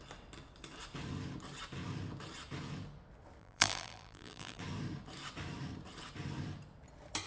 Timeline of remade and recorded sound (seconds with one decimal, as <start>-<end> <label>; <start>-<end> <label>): 0.0-3.4 recorded; 3.4-4.6 remade; 4.6-7.3 recorded